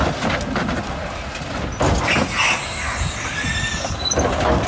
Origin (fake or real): real